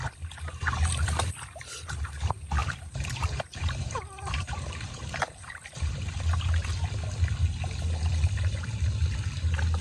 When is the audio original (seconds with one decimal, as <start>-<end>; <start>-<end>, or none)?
0.0-2.6; 6.5-9.8